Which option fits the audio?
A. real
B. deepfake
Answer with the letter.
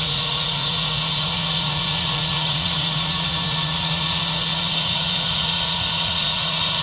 B